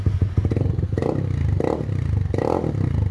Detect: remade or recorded recorded